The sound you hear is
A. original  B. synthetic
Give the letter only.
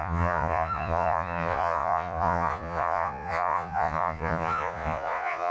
B